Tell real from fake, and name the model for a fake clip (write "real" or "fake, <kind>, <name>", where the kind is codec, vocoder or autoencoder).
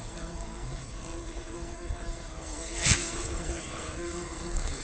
fake, codec, SNAC